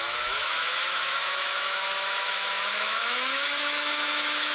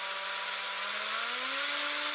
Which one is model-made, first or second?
first